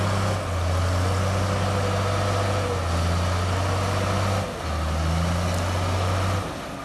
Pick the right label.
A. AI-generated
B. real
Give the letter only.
B